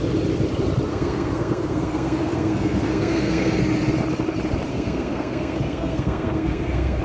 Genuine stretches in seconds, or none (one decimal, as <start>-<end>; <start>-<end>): 0.0-0.9; 3.6-4.7